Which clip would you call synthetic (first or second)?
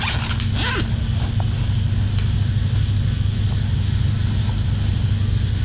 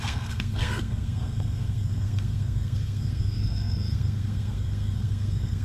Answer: second